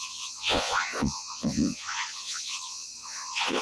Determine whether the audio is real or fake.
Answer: fake